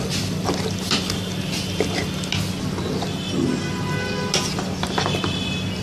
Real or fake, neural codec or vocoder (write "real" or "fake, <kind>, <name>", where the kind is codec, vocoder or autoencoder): real